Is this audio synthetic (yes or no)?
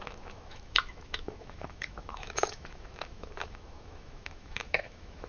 yes